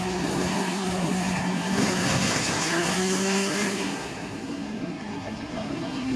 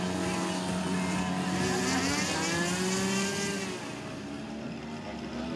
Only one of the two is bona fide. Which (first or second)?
second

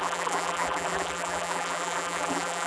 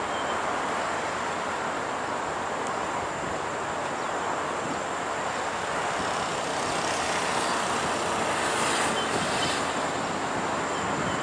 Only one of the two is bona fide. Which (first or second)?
second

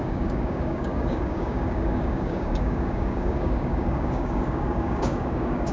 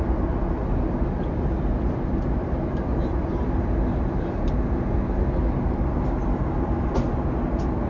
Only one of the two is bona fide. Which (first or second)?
second